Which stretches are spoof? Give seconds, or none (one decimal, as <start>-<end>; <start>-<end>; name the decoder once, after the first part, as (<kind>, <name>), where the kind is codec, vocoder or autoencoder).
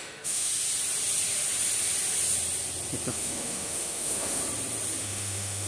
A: 0.0-0.5 (autoencoder, DAC-VAE); 3.1-4.4; 5.0-5.7